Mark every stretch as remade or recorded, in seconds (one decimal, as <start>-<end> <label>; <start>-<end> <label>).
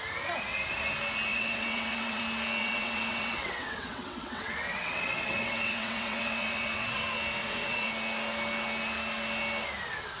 0.0-1.3 recorded; 1.3-2.2 remade; 2.2-2.6 recorded; 2.6-7.0 remade; 7.0-7.4 recorded; 7.4-7.9 remade; 7.9-10.2 recorded